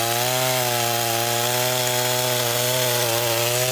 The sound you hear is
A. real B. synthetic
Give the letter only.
A